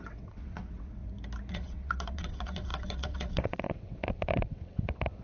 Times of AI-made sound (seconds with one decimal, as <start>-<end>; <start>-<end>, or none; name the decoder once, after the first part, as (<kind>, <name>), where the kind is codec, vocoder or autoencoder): 0.0-1.0 (vocoder, WaveNeXt); 1.5-5.2